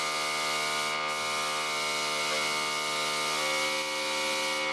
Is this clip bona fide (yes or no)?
yes